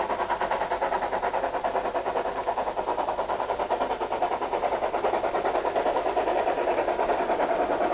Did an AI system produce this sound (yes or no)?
no